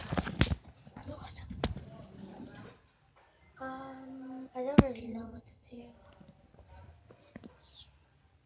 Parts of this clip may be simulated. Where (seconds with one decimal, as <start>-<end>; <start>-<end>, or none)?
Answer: 1.0-1.6; 5.0-5.8